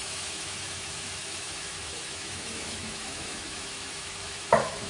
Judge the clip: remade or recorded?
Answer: remade